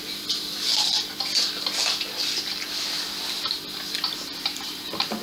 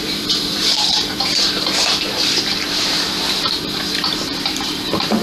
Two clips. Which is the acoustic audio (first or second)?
first